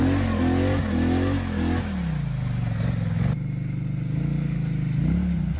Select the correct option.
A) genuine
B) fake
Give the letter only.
A